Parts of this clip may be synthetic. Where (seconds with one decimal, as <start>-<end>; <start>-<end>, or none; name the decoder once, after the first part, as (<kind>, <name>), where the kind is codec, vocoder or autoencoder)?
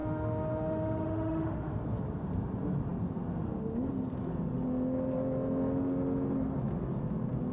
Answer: 0.0-1.7 (autoencoder, DAC-VAE)